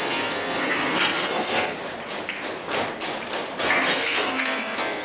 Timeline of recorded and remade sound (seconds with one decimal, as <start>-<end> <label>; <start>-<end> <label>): 0.0-1.7 remade; 1.7-3.6 recorded; 3.6-5.0 remade

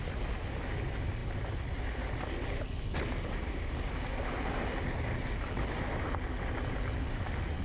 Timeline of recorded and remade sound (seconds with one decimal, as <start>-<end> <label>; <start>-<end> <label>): 0.0-7.6 recorded

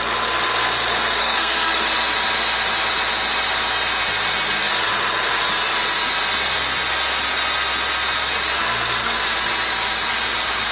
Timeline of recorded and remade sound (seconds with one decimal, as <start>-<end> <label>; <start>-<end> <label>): 0.0-1.2 recorded; 1.2-1.8 remade; 1.8-10.7 recorded

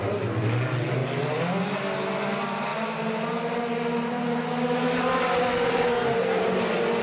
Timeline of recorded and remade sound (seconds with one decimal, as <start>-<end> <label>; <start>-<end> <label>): 0.0-5.4 recorded; 5.4-6.4 remade; 6.4-7.0 recorded

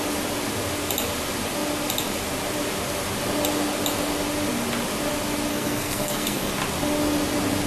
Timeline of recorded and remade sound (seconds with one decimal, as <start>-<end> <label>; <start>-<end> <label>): 0.0-5.5 recorded; 5.5-6.5 remade; 6.5-7.7 recorded

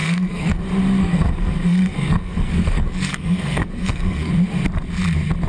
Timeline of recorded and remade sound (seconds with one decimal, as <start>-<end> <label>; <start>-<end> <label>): 0.0-0.6 remade; 0.6-1.0 recorded; 1.0-4.3 remade; 4.3-5.5 recorded

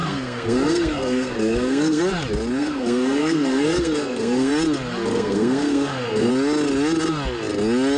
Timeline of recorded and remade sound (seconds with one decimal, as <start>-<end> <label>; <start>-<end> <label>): 0.0-2.0 remade; 2.0-2.6 recorded; 2.6-4.5 remade; 4.5-5.1 recorded; 5.1-6.3 remade; 6.3-8.0 recorded

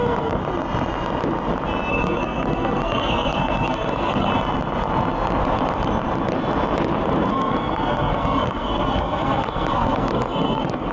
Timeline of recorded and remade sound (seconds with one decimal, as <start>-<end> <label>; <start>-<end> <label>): 0.0-0.4 remade; 0.4-1.9 recorded; 1.9-4.3 remade; 4.3-7.3 recorded; 7.3-10.9 remade